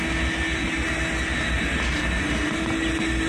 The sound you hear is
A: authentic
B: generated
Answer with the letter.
A